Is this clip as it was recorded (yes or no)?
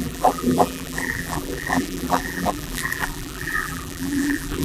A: no